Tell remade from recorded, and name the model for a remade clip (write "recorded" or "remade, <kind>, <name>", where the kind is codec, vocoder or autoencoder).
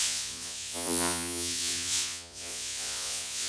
remade, vocoder, Vocos